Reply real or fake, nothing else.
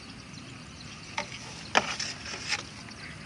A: real